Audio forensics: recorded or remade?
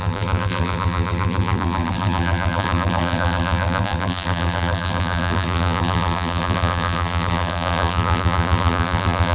remade